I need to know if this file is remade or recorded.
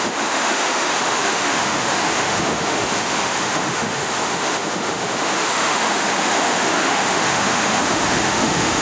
remade